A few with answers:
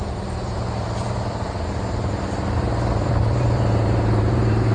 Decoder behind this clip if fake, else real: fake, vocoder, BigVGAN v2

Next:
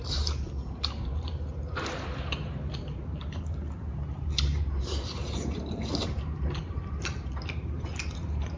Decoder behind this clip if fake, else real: fake, vocoder, BigVGAN v2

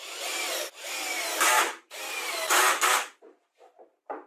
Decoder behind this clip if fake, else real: real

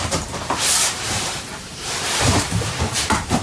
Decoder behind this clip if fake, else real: fake, vocoder, BigVGAN v2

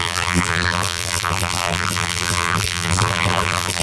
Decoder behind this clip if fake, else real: fake, vocoder, BigVGAN v2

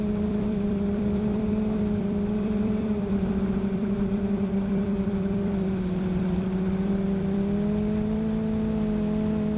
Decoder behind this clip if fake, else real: fake, vocoder, BigVGAN v2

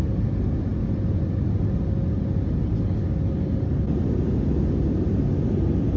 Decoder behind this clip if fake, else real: real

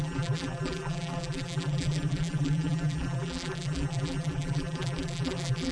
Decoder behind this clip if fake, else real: fake, vocoder, BigVGAN v2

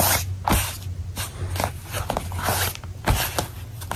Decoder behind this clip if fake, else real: real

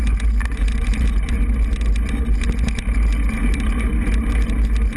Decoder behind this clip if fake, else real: real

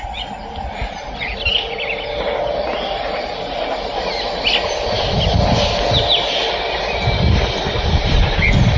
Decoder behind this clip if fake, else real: real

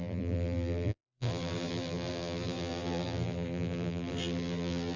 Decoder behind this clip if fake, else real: fake, vocoder, BigVGAN v2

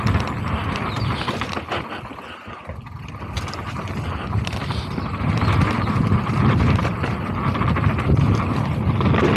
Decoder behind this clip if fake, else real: real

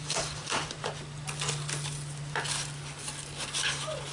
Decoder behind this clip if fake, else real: real